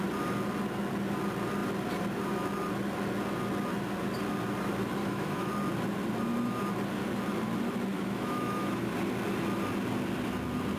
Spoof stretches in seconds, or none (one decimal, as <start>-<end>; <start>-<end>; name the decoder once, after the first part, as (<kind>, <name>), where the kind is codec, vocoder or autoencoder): 5.0-5.5 (autoencoder, DAC-VAE); 7.9-8.9